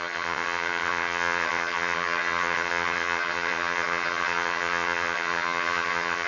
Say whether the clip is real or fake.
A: fake